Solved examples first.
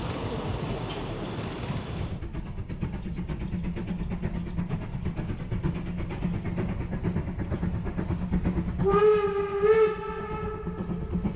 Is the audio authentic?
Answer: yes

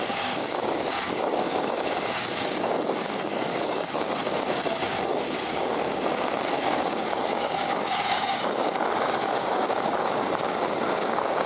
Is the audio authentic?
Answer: no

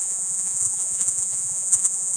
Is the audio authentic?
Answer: no